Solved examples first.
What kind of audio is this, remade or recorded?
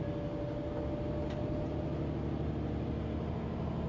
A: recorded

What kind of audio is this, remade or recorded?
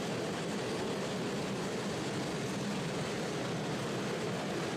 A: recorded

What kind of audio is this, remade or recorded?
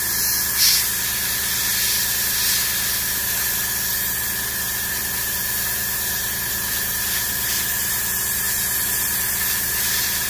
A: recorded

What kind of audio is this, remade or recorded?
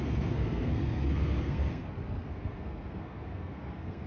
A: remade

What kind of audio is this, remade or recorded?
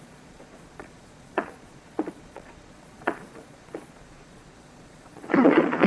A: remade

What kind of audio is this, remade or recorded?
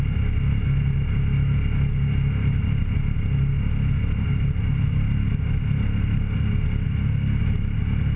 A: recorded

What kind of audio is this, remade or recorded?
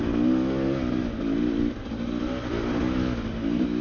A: recorded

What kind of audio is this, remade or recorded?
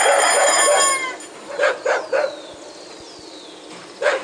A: recorded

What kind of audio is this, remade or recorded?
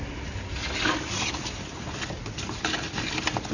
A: recorded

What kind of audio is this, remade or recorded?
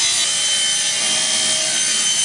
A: recorded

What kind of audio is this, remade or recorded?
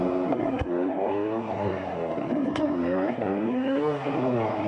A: remade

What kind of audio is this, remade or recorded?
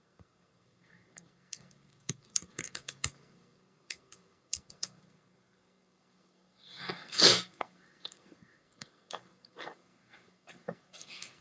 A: remade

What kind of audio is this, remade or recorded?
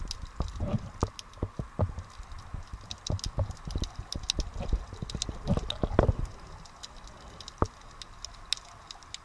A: recorded